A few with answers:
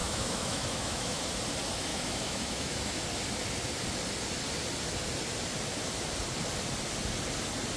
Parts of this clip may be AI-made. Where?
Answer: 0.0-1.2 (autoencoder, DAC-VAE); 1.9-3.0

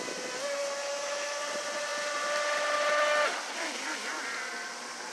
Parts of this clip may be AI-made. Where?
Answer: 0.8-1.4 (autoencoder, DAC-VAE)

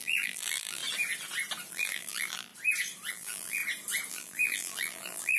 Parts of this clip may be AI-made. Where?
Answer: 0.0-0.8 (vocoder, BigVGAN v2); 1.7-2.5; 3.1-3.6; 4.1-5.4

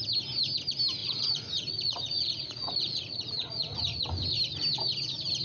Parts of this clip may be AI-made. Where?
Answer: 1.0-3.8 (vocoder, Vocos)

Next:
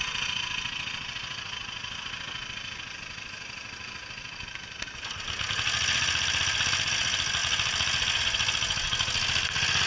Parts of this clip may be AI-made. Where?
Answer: none